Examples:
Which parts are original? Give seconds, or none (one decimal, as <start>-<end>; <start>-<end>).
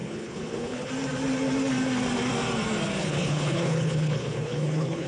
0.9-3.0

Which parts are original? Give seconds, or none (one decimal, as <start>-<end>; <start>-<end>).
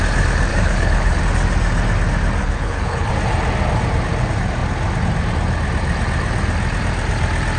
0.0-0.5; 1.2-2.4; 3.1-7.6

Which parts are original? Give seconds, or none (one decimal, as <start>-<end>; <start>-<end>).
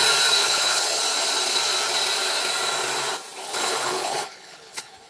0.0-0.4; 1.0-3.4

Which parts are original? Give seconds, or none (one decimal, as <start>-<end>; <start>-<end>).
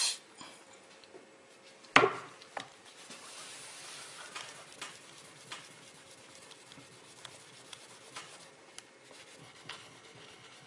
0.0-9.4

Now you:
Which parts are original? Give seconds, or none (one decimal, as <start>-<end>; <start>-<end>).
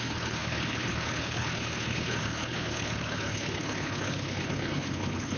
none